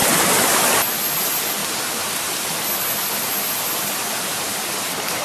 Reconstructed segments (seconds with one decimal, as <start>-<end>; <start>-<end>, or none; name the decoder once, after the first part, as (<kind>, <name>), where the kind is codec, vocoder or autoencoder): none

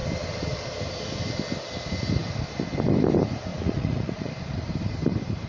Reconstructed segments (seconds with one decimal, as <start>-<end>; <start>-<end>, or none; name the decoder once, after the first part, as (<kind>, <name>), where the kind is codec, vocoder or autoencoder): 3.5-4.3 (vocoder, Vocos)

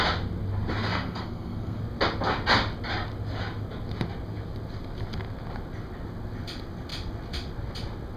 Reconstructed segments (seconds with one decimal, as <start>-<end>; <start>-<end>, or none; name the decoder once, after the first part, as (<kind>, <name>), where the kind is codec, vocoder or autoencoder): 0.9-1.8 (codec, SNAC)

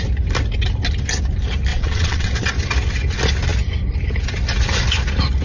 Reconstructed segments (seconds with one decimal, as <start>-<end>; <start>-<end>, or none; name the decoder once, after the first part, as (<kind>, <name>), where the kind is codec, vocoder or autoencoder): 1.7-2.5 (vocoder, WaveNeXt)